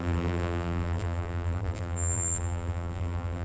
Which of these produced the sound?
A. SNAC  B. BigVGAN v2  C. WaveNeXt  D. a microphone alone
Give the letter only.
B